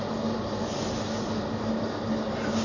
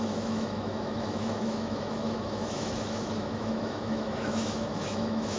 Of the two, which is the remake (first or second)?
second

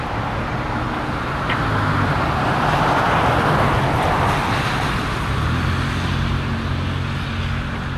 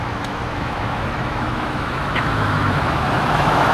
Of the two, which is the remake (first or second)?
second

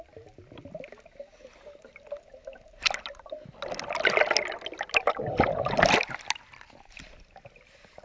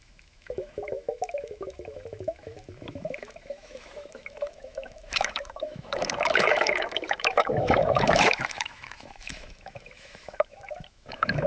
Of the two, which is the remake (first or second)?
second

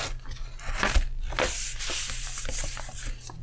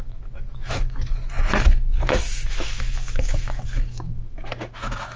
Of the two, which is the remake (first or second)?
second